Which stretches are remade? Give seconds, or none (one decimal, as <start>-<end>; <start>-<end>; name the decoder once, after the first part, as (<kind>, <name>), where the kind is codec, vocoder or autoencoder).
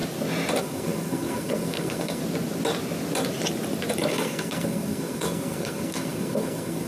0.6-2.2 (codec, SNAC); 4.1-6.9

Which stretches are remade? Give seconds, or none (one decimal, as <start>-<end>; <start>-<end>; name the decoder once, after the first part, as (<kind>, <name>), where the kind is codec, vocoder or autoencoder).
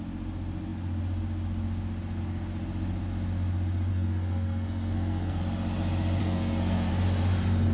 3.9-5.4 (codec, SNAC); 6.2-6.9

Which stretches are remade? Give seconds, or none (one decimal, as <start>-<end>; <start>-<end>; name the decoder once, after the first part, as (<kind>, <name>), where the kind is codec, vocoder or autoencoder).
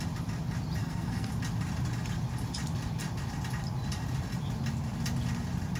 0.8-1.3 (codec, SNAC)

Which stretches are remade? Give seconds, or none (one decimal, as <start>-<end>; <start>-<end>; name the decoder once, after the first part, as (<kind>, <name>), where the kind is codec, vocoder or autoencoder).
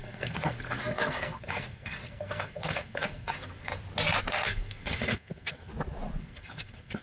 0.0-3.7 (codec, SNAC); 4.2-5.7; 6.2-7.0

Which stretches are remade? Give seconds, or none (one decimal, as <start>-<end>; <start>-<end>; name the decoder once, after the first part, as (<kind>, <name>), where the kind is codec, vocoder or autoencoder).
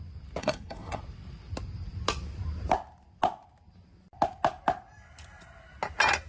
0.4-1.0 (codec, SNAC)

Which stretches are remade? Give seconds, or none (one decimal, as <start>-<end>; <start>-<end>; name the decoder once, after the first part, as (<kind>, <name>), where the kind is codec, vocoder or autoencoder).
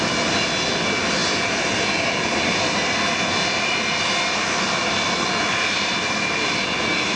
none